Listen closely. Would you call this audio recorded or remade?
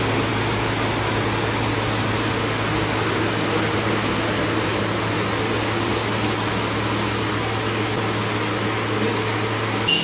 recorded